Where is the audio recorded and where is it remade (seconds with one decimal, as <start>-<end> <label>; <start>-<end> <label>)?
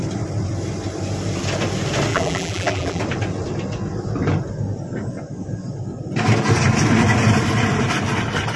0.0-2.1 recorded; 2.1-3.0 remade; 3.0-8.6 recorded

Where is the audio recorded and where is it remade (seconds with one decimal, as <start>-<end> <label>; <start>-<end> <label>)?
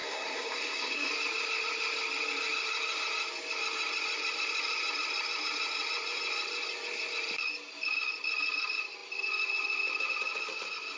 0.0-1.1 remade; 1.1-11.0 recorded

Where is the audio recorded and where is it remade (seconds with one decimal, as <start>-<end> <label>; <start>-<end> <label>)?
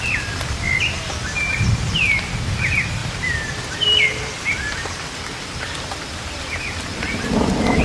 0.0-3.0 recorded; 3.0-5.6 remade; 5.6-6.9 recorded; 6.9-7.8 remade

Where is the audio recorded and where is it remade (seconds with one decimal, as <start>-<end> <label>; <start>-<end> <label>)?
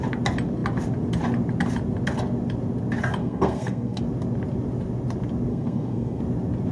0.0-3.2 recorded; 3.2-4.0 remade; 4.0-5.5 recorded; 5.5-6.2 remade; 6.2-6.7 recorded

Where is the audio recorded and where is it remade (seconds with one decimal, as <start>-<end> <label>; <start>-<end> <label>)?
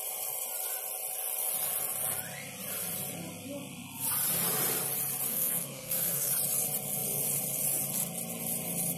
0.0-5.3 recorded; 5.3-6.3 remade; 6.3-9.0 recorded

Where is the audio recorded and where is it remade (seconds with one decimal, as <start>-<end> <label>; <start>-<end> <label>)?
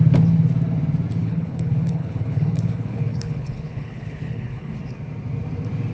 0.0-1.2 recorded; 1.2-4.7 remade; 4.7-5.9 recorded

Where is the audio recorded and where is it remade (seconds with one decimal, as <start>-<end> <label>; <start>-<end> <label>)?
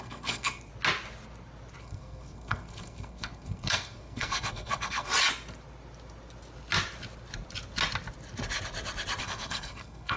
0.0-0.7 remade; 0.7-1.8 recorded; 1.8-5.1 remade; 5.1-9.2 recorded; 9.2-10.2 remade